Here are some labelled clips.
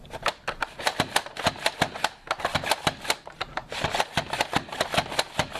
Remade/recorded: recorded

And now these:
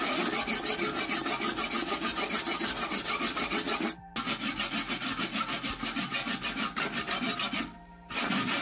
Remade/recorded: recorded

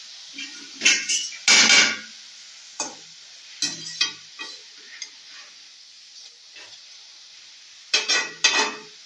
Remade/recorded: recorded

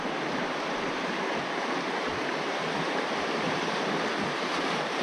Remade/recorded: remade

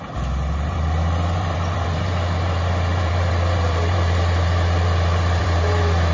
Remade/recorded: remade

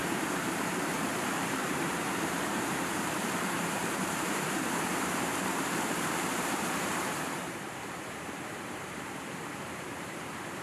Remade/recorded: remade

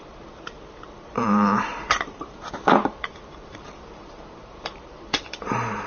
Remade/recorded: remade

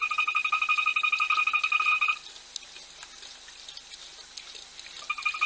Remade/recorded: recorded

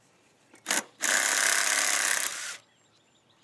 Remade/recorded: remade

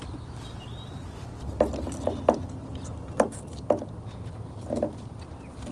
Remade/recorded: recorded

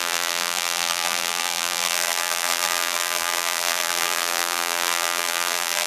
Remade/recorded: remade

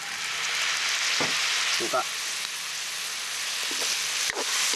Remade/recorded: recorded